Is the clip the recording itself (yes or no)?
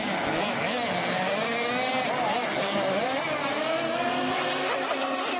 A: yes